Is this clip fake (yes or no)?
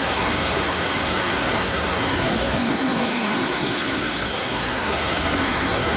yes